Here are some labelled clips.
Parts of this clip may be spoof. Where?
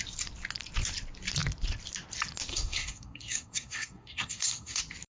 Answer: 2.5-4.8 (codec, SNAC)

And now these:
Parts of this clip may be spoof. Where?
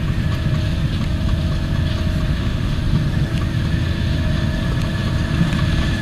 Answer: 2.3-2.8 (autoencoder, DAC-VAE)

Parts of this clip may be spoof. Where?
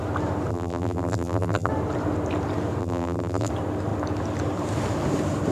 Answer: 0.5-1.7 (vocoder, BigVGAN v2); 2.8-3.5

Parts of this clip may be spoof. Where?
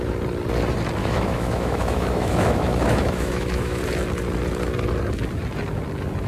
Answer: 1.0-3.8 (autoencoder, DAC-VAE)